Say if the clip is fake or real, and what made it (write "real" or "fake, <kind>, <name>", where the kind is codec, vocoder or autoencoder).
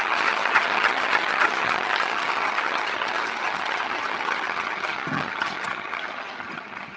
fake, vocoder, HiFi-GAN